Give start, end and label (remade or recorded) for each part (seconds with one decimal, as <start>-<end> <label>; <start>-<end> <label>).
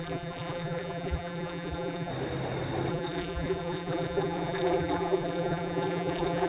0.0-2.1 remade; 2.1-2.9 recorded; 2.9-6.5 remade